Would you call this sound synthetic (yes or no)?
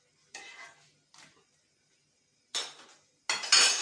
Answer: no